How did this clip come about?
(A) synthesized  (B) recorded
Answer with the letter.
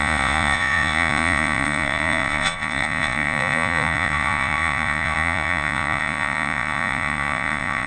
A